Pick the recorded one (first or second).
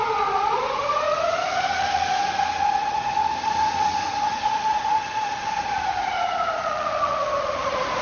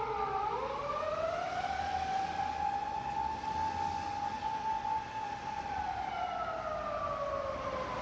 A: second